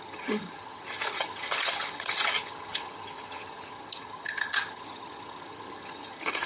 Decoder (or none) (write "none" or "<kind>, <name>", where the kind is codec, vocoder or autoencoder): vocoder, HiFi-GAN